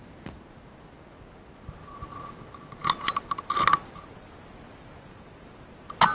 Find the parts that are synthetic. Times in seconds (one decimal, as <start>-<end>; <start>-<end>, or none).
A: none